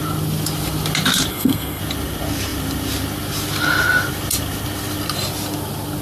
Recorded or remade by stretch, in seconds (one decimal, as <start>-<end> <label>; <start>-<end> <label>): 0.0-1.3 recorded; 1.3-1.8 remade; 1.8-6.0 recorded